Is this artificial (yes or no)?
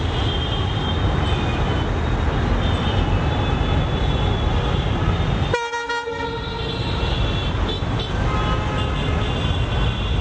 no